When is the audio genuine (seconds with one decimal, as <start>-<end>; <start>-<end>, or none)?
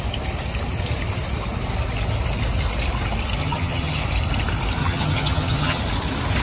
0.0-3.4; 4.0-4.8; 5.8-6.4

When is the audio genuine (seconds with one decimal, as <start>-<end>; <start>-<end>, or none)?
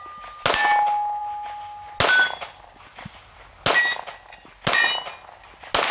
0.0-5.9